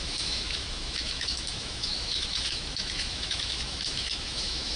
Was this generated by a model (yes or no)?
yes